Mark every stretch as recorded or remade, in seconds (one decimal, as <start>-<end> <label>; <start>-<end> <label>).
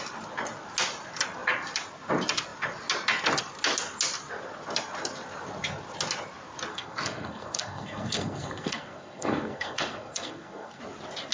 0.0-6.7 recorded; 6.7-10.8 remade; 10.8-11.3 recorded